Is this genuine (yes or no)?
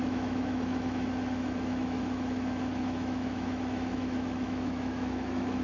no